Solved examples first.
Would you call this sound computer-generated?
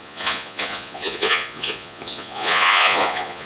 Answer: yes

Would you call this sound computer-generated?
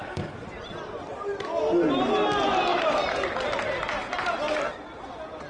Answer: no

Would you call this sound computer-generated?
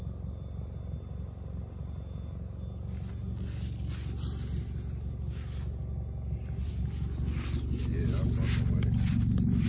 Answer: no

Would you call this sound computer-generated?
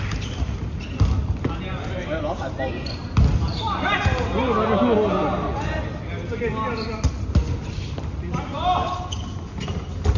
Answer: no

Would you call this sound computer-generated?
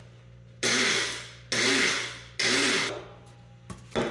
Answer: no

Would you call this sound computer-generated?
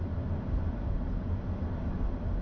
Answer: no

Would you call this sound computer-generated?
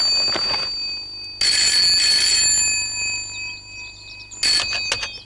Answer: no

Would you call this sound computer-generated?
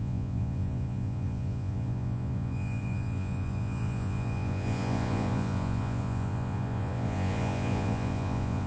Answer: yes